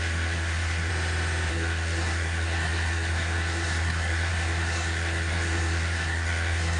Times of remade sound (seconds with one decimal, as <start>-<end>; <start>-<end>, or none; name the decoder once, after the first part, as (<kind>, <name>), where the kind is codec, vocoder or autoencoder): 0.0-0.9 (codec, SNAC); 1.5-6.8